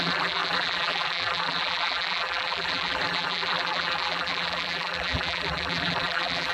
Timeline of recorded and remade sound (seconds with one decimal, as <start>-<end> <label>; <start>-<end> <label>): 0.0-6.5 remade